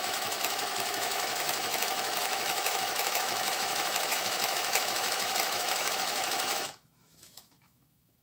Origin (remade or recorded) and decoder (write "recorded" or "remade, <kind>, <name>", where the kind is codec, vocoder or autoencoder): remade, autoencoder, DAC-VAE